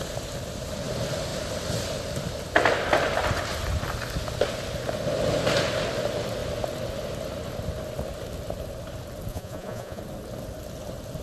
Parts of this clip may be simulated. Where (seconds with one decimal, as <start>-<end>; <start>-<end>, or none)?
9.3-10.0